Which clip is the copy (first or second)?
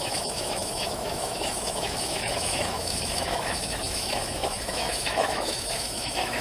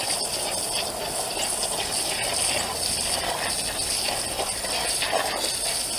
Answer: first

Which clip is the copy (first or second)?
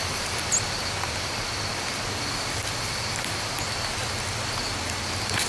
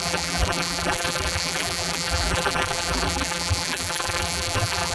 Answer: second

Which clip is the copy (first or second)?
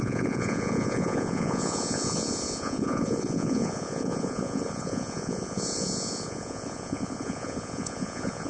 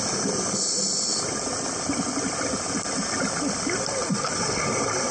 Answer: first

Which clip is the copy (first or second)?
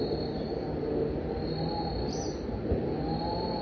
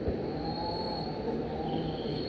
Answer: second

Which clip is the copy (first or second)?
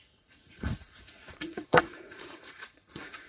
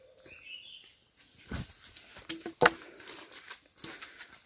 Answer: first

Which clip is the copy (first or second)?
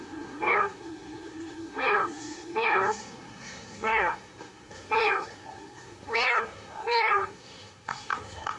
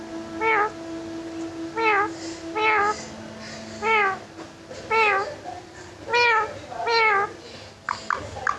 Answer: first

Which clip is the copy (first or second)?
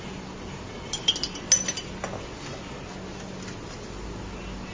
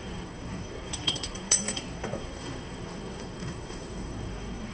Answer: second